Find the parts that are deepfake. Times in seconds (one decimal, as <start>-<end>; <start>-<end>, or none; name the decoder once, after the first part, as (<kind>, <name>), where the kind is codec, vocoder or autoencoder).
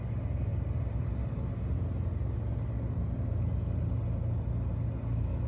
none